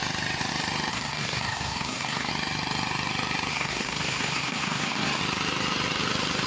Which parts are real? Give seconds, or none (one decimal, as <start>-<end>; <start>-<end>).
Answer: 0.0-0.9; 2.3-3.5; 5.2-6.5